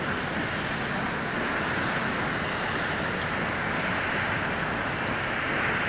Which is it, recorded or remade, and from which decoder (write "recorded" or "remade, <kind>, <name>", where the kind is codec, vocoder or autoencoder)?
recorded